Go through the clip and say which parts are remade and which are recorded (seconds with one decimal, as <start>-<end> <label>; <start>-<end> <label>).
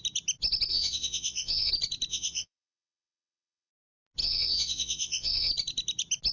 0.0-0.7 recorded; 0.7-1.7 remade; 1.7-2.1 recorded; 2.1-3.7 remade; 3.7-4.2 recorded; 4.2-5.5 remade; 5.5-6.3 recorded